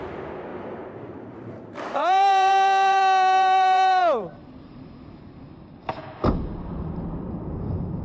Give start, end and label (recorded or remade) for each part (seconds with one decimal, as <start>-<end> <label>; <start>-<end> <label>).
0.0-0.5 recorded; 0.5-5.2 remade; 5.2-8.0 recorded